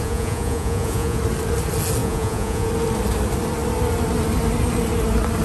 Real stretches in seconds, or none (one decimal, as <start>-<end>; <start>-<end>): 1.2-2.0; 2.7-5.4

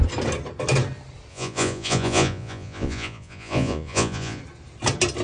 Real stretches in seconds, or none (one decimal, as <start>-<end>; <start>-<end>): 0.0-1.3; 4.4-5.2

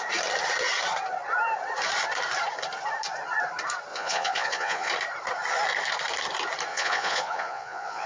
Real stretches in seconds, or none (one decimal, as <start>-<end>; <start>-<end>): 0.0-3.9; 4.9-6.7

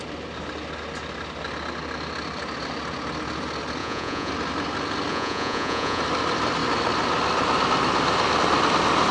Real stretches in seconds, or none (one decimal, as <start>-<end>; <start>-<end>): 0.0-3.8; 4.3-5.1; 6.0-9.1

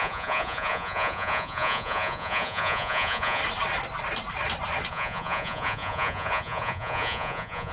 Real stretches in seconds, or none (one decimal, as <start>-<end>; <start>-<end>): 3.4-4.9

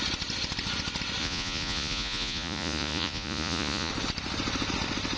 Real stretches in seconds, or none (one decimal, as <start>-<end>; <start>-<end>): 0.0-1.2; 3.9-5.2

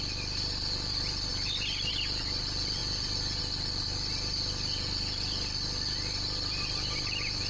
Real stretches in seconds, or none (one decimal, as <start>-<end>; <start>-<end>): 0.0-7.5